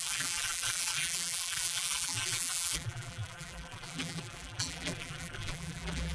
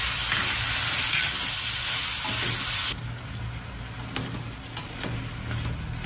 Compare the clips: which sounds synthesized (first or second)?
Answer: first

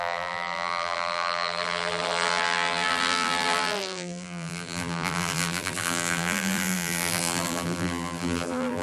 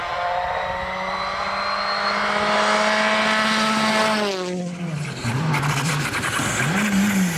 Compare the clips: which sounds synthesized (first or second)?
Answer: first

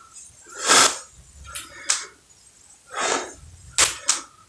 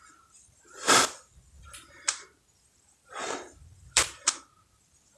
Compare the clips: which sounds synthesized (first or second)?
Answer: second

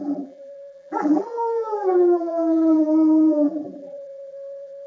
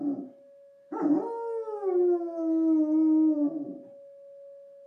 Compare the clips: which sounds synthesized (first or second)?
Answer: first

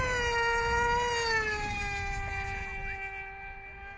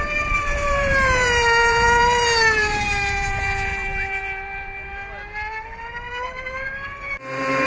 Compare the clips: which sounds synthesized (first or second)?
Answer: second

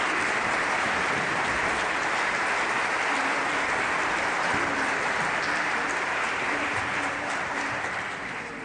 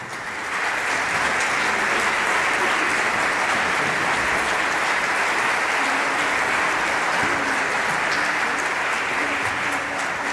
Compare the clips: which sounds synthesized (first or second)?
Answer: first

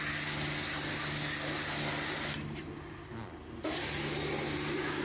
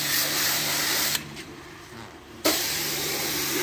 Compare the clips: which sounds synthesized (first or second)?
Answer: second